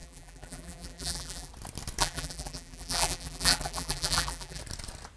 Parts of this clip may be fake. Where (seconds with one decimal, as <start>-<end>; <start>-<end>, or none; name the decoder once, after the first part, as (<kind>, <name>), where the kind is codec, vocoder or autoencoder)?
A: 0.0-1.5 (vocoder, BigVGAN v2); 2.0-4.6